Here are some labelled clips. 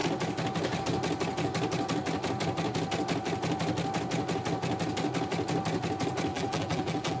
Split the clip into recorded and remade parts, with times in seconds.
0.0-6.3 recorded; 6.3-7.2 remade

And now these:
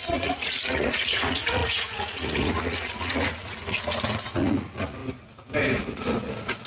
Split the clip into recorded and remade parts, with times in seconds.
0.0-5.0 remade; 5.0-5.8 recorded; 5.8-6.7 remade

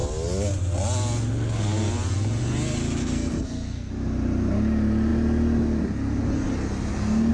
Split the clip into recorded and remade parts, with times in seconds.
0.0-3.0 recorded; 3.0-3.9 remade; 3.9-7.3 recorded

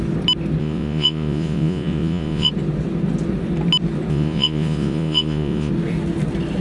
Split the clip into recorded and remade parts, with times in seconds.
0.0-0.6 recorded; 0.6-2.5 remade; 2.5-4.1 recorded; 4.1-5.7 remade; 5.7-6.6 recorded

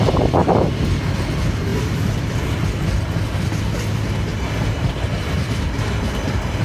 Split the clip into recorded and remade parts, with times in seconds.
0.0-6.6 recorded

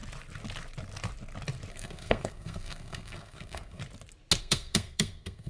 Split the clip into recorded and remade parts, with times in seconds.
0.0-1.7 recorded; 1.7-3.8 remade; 3.8-4.4 recorded; 4.4-5.5 remade

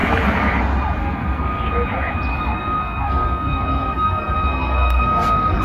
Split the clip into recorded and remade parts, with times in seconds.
0.0-1.0 recorded; 1.0-1.7 remade; 1.7-2.3 recorded; 2.3-5.6 remade